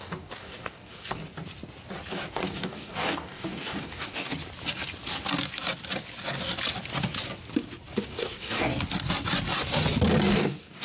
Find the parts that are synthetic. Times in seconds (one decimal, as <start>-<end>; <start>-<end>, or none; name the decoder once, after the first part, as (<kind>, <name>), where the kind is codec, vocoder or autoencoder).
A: 0.0-1.2 (codec, DAC); 2.3-4.3; 8.0-8.7; 10.3-10.8